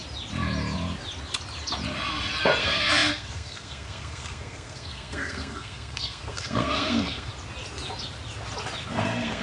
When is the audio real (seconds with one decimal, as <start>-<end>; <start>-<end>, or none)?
0.0-2.6; 7.3-8.9